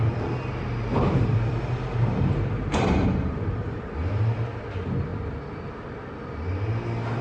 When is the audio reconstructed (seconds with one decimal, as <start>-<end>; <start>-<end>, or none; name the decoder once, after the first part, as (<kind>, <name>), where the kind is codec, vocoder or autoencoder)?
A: 0.9-4.1 (vocoder, BigVGAN v2)